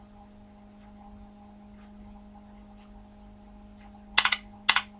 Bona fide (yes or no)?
yes